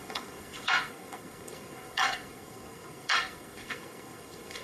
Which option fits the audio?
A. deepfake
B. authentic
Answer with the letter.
A